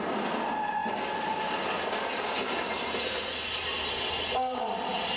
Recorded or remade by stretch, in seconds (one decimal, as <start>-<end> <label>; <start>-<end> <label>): 0.0-5.2 recorded